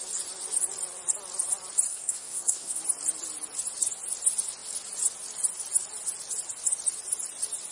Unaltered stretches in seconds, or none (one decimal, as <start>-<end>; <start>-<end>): 0.0-1.9; 2.8-7.7